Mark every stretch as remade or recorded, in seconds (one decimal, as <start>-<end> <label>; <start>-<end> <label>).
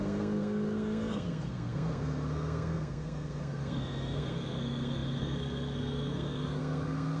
0.0-7.2 remade